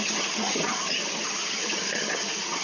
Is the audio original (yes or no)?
no